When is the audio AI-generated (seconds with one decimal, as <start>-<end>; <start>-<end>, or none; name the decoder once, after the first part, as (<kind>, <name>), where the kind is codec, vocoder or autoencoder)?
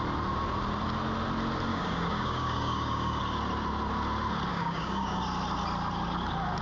1.7-3.2 (codec, DAC); 4.5-5.2